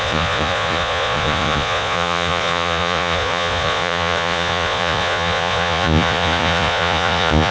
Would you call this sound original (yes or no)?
no